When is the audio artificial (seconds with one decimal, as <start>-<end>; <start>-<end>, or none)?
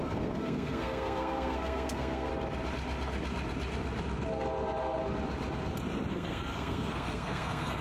0.0-2.3; 6.1-7.8